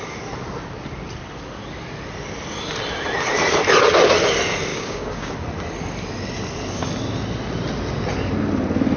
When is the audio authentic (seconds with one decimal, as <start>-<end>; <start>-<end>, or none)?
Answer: 0.0-4.7; 5.3-9.0